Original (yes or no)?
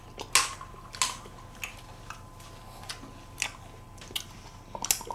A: yes